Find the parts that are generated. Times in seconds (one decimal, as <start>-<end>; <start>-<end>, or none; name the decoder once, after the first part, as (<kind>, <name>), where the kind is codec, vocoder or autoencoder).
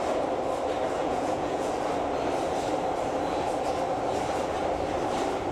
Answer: 1.0-1.7 (vocoder, Vocos)